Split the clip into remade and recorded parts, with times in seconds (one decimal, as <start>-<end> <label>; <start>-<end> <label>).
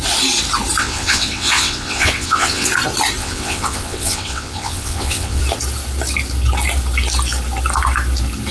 0.0-0.8 recorded; 0.8-2.7 remade; 2.7-3.2 recorded; 3.2-5.4 remade; 5.4-8.5 recorded